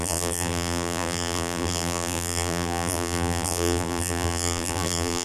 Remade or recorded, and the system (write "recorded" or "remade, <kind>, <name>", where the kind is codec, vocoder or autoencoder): remade, vocoder, BigVGAN v2